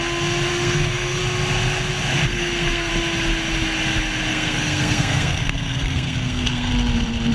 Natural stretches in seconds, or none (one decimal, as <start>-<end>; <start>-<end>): 0.0-0.5; 1.2-2.3; 2.9-4.3; 6.7-7.3